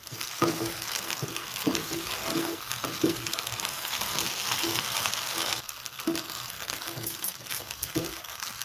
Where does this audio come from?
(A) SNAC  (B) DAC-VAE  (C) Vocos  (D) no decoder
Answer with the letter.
A